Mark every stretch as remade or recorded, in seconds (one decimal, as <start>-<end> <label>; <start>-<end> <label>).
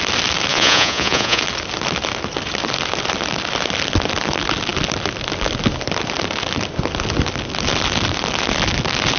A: 0.0-0.5 recorded; 0.5-1.4 remade; 1.4-9.2 recorded